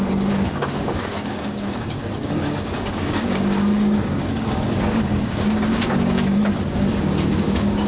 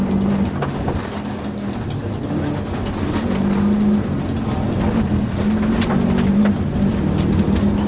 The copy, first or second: first